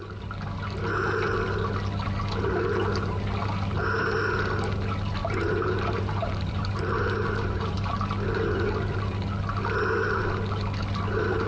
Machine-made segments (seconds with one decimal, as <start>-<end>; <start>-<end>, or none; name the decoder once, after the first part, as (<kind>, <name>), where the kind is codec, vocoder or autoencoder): 5.2-7.9 (vocoder, BigVGAN v2)